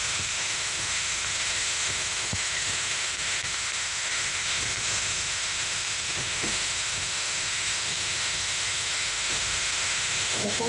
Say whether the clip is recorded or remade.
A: remade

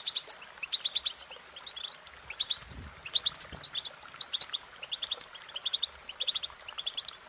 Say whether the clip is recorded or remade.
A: recorded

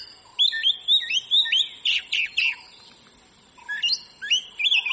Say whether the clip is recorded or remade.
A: recorded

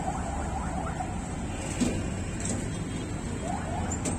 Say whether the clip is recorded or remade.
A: recorded